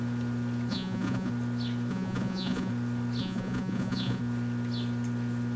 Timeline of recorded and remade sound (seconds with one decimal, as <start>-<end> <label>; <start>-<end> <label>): 0.0-0.7 recorded; 0.7-1.3 remade; 1.3-1.9 recorded; 1.9-2.7 remade; 2.7-3.2 recorded; 3.2-4.2 remade; 4.2-5.6 recorded